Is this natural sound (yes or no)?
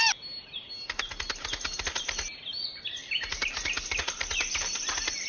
yes